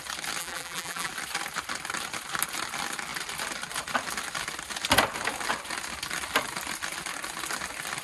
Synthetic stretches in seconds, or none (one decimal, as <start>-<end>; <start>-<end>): 0.4-1.1